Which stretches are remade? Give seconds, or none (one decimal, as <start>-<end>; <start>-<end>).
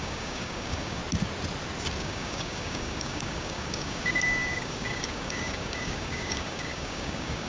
0.0-1.0; 2.0-7.5